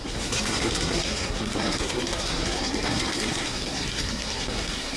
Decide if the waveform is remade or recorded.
remade